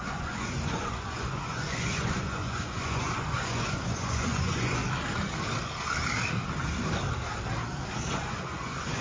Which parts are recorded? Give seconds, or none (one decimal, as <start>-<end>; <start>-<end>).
4.8-8.1